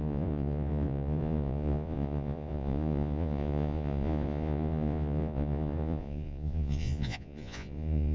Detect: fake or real fake